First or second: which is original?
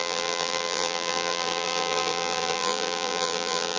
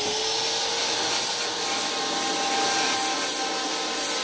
second